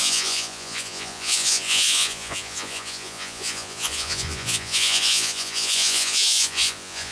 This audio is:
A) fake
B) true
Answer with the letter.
A